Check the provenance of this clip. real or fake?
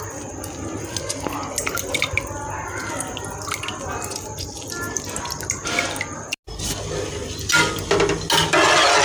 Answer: real